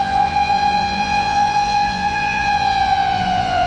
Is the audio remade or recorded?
remade